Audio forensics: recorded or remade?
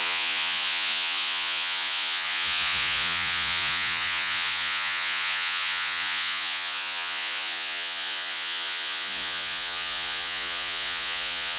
remade